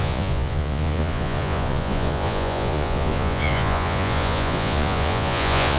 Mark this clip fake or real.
fake